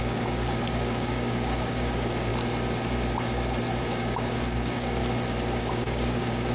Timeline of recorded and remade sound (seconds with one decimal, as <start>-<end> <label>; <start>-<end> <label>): 0.0-2.3 remade; 2.3-3.8 recorded; 3.8-5.0 remade; 5.0-5.6 recorded; 5.6-6.5 remade